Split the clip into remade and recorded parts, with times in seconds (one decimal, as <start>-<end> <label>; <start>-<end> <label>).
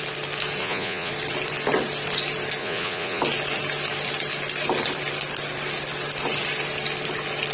0.0-0.6 recorded; 0.6-1.1 remade; 1.1-2.6 recorded; 2.6-3.2 remade; 3.2-7.5 recorded